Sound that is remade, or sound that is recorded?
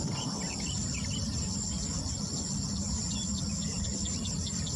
recorded